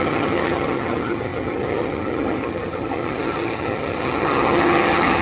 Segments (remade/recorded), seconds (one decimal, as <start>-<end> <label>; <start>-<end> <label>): 0.0-5.2 remade